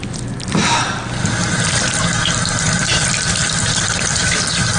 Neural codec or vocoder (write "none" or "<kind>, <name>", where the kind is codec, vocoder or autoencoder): vocoder, BigVGAN v2